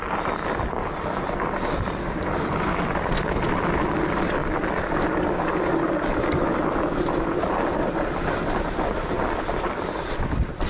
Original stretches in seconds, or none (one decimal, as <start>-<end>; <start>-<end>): 0.0-10.7